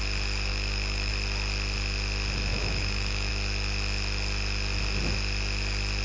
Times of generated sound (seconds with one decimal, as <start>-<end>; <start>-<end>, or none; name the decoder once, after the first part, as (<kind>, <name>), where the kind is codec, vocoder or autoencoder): 0.5-1.1 (autoencoder, DAC-VAE); 2.5-3.3